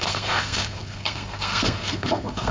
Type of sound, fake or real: fake